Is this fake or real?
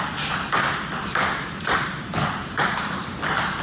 real